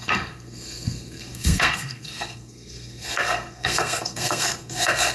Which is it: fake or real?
fake